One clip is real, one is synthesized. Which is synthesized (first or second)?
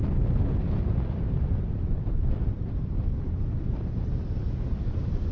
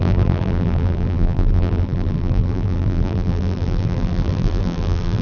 second